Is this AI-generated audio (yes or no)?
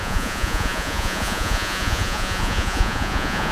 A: yes